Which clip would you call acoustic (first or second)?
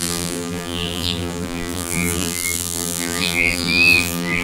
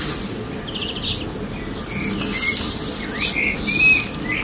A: second